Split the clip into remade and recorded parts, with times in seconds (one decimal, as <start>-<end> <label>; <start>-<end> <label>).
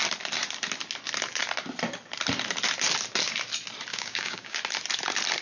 0.0-3.9 recorded; 3.9-4.6 remade; 4.6-5.4 recorded